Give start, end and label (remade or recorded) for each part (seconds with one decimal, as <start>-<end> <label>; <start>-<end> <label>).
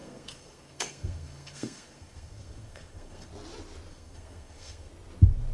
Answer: 0.0-3.3 remade; 3.3-3.9 recorded; 3.9-4.9 remade; 4.9-5.5 recorded